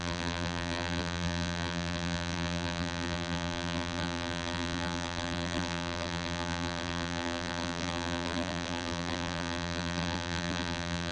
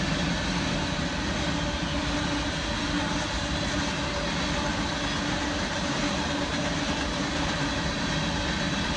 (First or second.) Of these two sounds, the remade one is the first